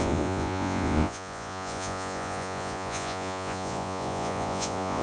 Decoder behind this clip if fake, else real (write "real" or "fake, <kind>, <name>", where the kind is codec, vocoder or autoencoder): fake, vocoder, Vocos